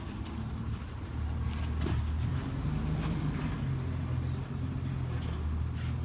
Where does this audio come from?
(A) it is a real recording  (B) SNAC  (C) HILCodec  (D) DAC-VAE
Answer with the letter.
A